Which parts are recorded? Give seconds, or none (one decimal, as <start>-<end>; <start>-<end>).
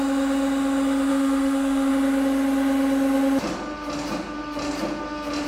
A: 0.0-1.1; 1.9-5.5